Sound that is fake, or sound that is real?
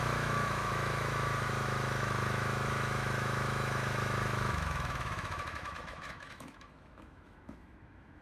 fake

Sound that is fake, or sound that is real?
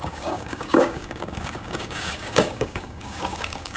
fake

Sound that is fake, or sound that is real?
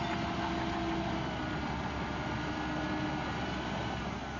real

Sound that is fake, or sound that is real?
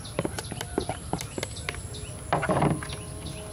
real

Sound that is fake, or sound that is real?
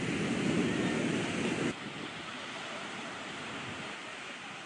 real